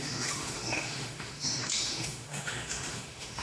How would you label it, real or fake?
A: fake